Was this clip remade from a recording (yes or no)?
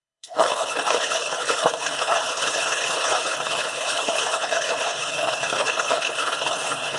yes